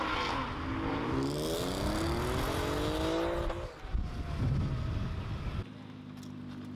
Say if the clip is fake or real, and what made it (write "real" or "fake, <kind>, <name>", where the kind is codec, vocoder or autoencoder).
real